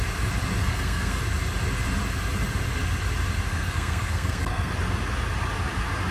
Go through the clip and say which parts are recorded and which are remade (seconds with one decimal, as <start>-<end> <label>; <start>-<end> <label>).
0.0-0.6 recorded; 0.6-1.2 remade; 1.2-3.5 recorded; 3.5-4.7 remade; 4.7-6.1 recorded